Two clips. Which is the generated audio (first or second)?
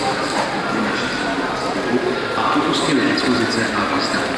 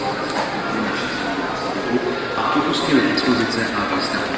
first